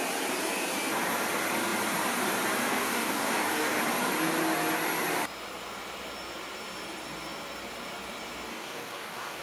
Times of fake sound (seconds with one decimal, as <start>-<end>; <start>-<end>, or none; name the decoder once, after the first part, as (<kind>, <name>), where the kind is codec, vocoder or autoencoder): 2.7-3.8 (codec, DAC); 8.5-9.4